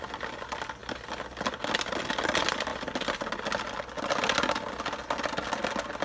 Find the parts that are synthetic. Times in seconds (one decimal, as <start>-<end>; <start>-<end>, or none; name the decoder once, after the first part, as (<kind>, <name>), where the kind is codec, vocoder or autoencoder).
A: none